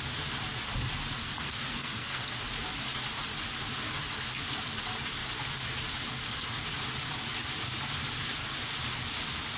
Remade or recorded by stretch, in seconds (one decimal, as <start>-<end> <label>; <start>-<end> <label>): 0.0-1.2 recorded; 1.2-2.3 remade; 2.3-9.6 recorded